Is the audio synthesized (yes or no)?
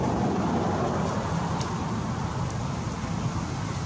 no